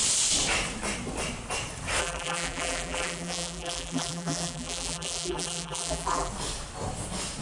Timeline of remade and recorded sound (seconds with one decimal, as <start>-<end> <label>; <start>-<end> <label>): 0.0-2.0 recorded; 2.0-6.3 remade; 6.3-7.4 recorded

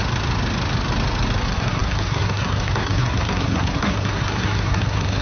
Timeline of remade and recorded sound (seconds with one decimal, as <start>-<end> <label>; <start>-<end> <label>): 0.0-1.4 recorded; 1.4-5.2 remade